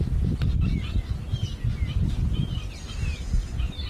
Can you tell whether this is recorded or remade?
recorded